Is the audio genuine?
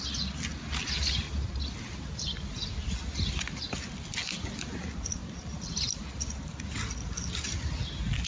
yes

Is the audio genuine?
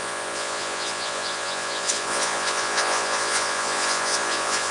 no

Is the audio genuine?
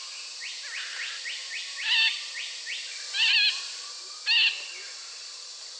yes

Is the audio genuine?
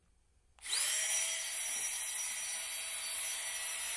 yes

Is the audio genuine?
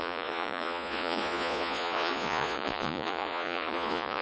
no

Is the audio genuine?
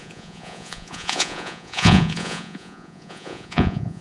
no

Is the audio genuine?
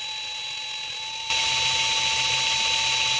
yes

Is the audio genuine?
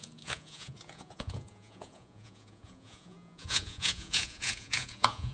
no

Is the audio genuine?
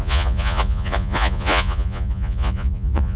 no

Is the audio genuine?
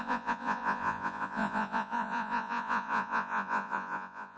no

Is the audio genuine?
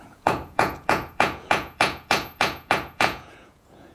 no